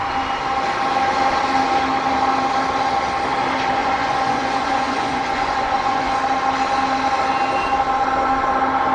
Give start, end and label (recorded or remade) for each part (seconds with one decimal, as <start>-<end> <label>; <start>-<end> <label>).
0.0-3.8 recorded; 3.8-6.2 remade; 6.2-8.9 recorded